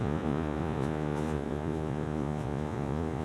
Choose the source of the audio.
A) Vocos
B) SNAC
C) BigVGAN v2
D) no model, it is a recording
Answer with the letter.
A